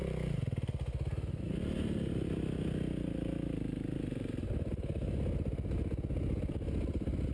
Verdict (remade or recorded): recorded